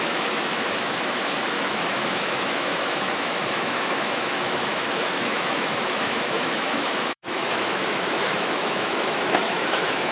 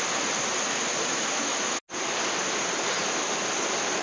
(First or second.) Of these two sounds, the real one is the second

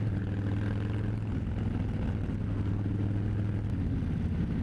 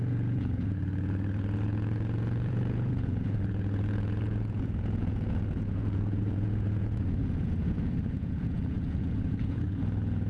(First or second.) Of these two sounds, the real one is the first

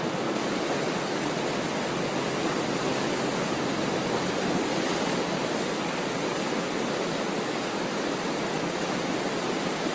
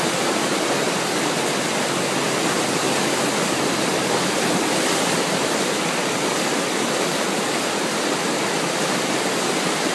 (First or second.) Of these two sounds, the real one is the first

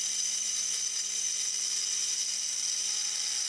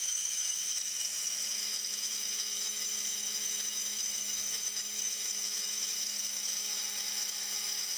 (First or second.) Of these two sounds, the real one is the first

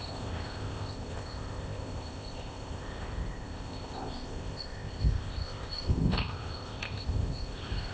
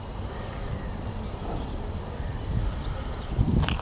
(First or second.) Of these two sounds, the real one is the second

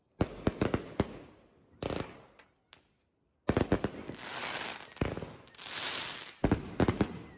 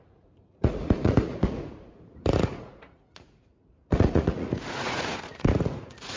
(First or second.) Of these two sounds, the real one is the first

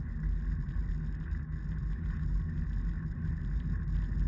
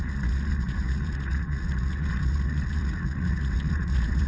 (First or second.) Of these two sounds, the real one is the first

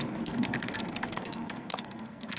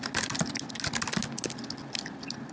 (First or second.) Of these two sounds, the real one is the second